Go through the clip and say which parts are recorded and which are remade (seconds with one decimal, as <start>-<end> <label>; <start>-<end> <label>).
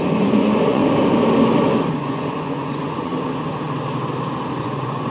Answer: 0.0-0.8 remade; 0.8-1.9 recorded; 1.9-3.1 remade; 3.1-4.6 recorded; 4.6-5.1 remade